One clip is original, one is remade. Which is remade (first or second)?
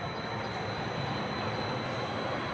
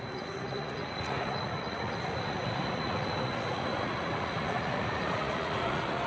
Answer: second